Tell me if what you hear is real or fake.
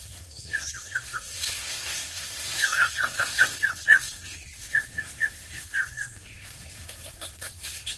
fake